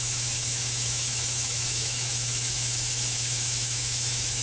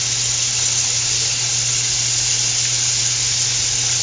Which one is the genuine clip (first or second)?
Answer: second